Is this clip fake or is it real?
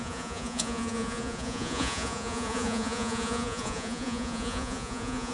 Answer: fake